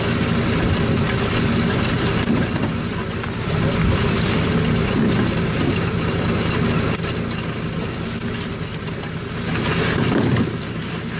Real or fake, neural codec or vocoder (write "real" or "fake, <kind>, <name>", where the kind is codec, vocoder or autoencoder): real